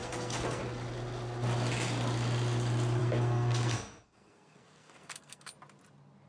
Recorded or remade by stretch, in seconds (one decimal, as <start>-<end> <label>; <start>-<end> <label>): 0.0-0.6 remade; 0.6-3.0 recorded; 3.0-5.5 remade; 5.5-6.3 recorded